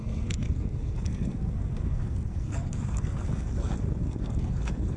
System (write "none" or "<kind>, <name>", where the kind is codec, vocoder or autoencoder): codec, SNAC